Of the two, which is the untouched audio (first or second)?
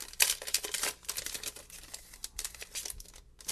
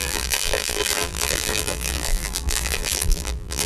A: first